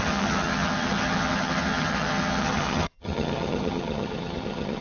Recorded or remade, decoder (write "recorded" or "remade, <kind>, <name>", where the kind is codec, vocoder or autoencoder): remade, vocoder, HiFi-GAN